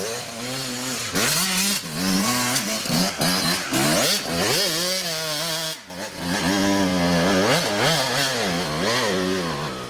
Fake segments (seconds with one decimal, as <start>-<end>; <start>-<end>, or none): 2.2-3.1